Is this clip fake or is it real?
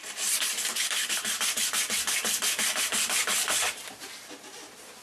fake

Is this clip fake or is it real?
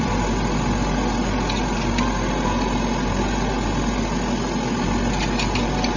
real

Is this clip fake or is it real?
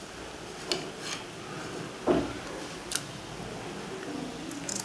real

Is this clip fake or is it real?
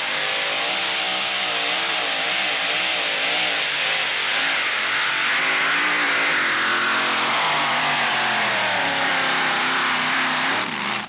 fake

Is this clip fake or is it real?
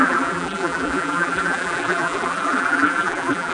fake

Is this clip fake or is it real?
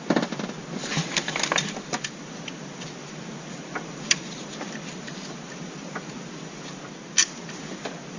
fake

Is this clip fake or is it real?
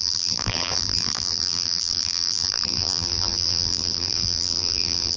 fake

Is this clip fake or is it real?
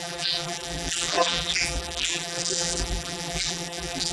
fake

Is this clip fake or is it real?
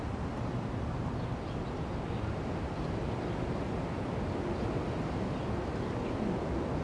real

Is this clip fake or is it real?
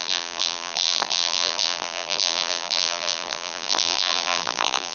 fake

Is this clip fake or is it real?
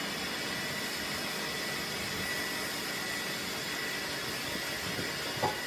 real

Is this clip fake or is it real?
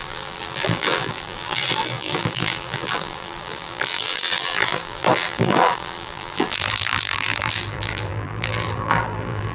fake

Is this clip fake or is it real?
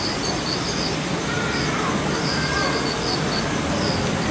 real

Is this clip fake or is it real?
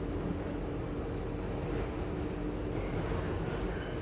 real